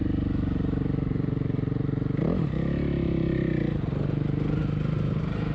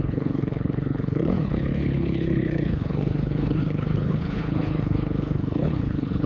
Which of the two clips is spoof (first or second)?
second